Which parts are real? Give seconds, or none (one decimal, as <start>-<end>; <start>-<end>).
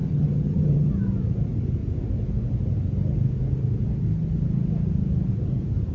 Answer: 0.9-5.9